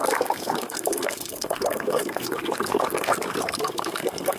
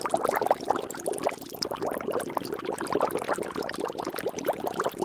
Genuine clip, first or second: second